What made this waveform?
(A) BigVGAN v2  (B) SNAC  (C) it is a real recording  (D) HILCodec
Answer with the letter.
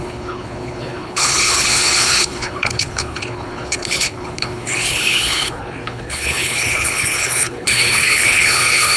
D